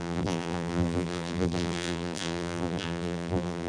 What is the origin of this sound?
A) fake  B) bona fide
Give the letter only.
A